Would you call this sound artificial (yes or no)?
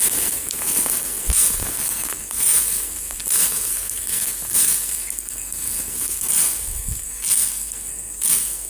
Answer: yes